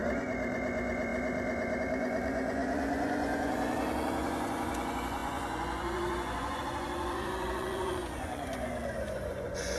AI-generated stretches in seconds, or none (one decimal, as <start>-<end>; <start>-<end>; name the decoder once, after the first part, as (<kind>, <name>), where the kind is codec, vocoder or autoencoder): 0.0-9.8 (vocoder, Vocos)